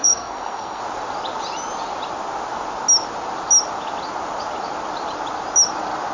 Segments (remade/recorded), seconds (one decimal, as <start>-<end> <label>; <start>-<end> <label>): 0.0-0.8 remade; 0.8-6.1 recorded